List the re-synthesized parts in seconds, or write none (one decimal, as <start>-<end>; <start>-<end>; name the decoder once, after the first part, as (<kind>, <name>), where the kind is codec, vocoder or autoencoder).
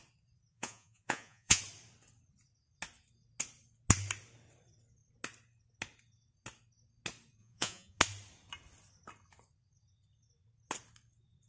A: 0.5-1.6 (vocoder, Vocos); 7.4-8.0